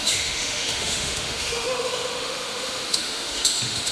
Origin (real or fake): fake